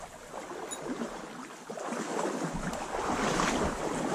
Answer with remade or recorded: recorded